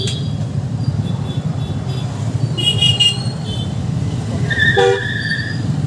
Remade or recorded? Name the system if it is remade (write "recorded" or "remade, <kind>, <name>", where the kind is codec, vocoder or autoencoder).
recorded